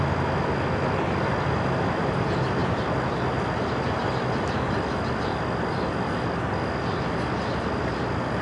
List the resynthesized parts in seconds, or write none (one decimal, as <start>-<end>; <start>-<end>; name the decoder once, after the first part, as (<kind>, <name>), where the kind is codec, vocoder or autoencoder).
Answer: none

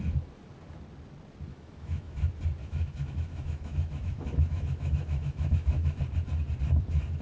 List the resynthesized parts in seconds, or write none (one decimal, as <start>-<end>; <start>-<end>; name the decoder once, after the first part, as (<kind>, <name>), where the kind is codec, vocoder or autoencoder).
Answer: 1.5-2.2 (autoencoder, DAC-VAE); 2.6-6.0

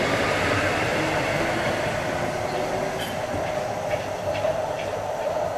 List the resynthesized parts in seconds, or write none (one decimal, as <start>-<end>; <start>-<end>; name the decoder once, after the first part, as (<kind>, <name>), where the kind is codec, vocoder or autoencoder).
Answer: 0.0-0.9 (vocoder, BigVGAN v2); 4.3-5.6

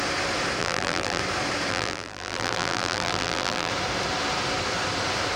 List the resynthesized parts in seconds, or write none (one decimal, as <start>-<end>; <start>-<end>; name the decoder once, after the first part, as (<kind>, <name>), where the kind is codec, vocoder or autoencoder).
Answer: 0.6-1.2 (vocoder, BigVGAN v2); 1.7-3.7